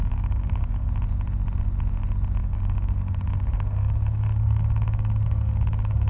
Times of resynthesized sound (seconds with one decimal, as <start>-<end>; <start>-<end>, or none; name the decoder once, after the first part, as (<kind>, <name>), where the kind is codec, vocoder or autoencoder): 0.0-0.9 (codec, DAC); 2.4-6.1

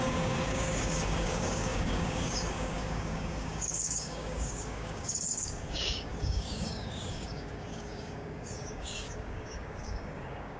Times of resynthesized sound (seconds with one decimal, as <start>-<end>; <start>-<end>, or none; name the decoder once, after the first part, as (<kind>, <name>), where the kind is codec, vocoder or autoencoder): 0.0-10.6 (codec, DAC)

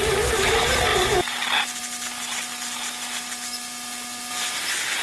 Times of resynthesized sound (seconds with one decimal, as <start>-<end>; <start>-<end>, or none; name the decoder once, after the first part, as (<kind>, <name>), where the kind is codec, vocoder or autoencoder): none

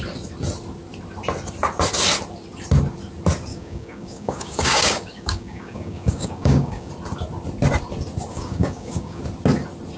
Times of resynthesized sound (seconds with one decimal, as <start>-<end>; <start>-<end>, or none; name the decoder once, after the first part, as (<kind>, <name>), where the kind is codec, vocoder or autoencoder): 3.5-6.9 (codec, DAC); 8.3-9.2